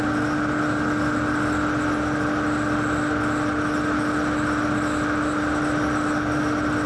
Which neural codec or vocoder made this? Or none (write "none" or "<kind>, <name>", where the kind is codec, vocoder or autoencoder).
none